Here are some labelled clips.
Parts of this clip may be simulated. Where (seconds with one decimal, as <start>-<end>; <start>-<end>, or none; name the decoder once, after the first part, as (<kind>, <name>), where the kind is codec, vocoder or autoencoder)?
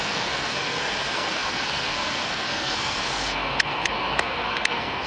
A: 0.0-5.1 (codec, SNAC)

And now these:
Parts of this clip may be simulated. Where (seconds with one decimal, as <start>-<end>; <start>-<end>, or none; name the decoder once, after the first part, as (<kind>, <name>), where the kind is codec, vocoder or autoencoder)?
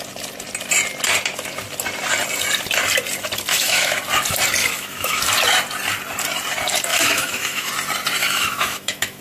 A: 3.5-4.0 (autoencoder, DAC-VAE); 4.6-5.2; 6.9-7.7; 8.2-9.2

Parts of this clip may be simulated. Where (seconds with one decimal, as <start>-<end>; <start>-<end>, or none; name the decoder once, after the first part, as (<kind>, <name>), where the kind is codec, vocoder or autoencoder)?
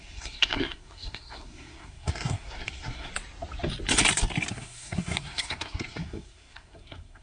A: 0.0-3.1 (codec, SNAC); 4.5-7.2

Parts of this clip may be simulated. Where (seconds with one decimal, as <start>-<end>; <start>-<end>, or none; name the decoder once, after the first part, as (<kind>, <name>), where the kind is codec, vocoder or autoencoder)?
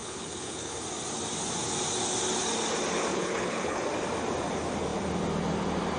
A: 0.0-0.8 (codec, HILCodec); 3.1-3.8